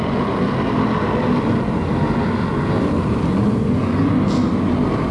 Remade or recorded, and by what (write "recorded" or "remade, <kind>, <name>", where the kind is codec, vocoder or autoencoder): recorded